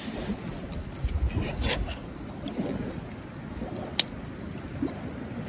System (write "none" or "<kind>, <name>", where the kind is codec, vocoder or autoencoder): none